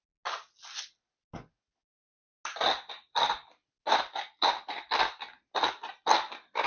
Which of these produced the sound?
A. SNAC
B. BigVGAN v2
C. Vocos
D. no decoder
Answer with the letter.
D